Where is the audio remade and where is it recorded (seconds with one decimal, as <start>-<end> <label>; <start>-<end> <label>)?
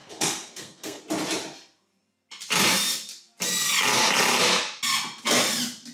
0.0-1.0 remade; 1.0-5.9 recorded